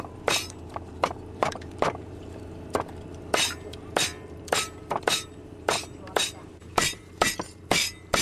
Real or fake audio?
fake